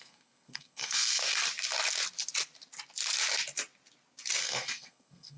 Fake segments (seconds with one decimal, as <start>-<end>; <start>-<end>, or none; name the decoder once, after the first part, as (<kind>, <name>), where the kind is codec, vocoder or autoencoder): 0.0-1.2 (codec, SNAC); 4.4-5.4